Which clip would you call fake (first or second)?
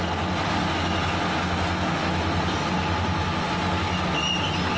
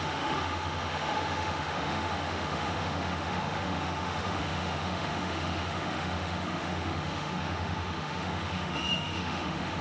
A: second